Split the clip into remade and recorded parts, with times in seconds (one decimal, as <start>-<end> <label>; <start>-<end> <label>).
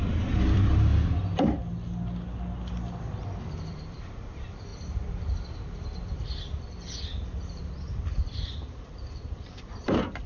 0.0-0.9 remade; 0.9-3.4 recorded; 3.4-4.7 remade; 4.7-6.6 recorded; 6.6-10.3 remade